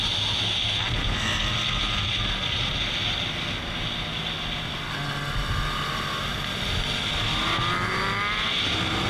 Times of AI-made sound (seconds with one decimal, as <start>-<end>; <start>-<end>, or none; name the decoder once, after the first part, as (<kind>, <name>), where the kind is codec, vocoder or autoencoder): none

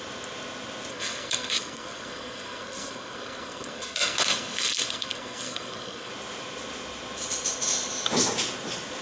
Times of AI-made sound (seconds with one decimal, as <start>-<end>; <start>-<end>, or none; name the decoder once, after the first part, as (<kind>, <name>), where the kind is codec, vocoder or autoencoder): 0.9-6.1 (codec, SNAC)

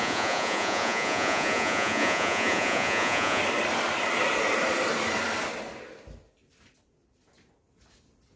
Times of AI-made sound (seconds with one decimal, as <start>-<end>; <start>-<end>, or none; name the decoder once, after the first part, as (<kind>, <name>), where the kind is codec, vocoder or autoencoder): 0.0-3.4 (vocoder, Vocos)

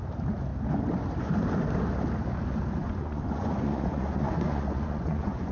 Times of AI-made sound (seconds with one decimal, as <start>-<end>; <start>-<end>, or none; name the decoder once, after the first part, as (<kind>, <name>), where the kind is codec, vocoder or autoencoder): 2.8-5.5 (vocoder, Vocos)